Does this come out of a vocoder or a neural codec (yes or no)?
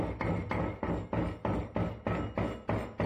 no